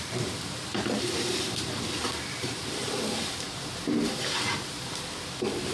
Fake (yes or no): yes